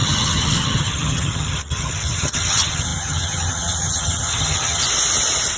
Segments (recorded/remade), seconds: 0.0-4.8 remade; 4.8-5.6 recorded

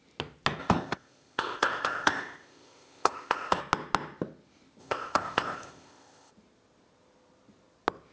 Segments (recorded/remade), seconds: 0.0-0.6 recorded; 0.6-3.6 remade; 3.6-4.8 recorded; 4.8-6.3 remade; 6.3-8.1 recorded

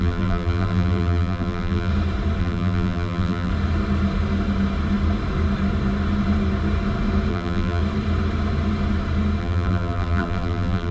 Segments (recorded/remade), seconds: 0.0-1.9 remade; 1.9-2.4 recorded; 2.4-3.5 remade; 3.5-7.3 recorded; 7.3-7.8 remade; 7.8-9.4 recorded; 9.4-10.9 remade